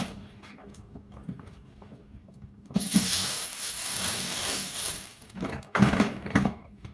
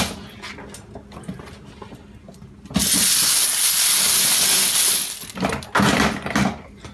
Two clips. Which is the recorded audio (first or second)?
second